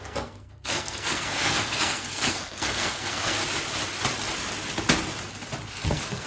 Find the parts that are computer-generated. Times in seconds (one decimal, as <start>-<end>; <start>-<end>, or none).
0.0-3.4; 5.7-6.3